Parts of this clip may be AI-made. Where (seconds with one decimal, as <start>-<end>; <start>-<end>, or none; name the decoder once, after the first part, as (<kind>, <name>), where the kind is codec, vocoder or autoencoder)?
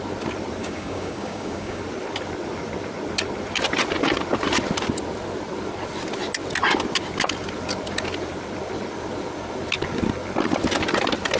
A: 0.6-1.8 (codec, DAC)